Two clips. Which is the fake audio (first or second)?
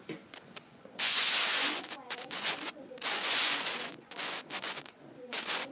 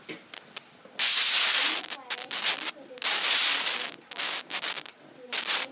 first